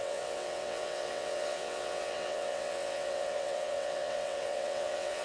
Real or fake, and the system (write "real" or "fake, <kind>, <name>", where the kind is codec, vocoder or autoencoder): fake, vocoder, WaveNeXt